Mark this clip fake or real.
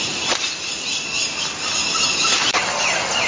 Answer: real